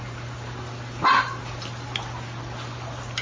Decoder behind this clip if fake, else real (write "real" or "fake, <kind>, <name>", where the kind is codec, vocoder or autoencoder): real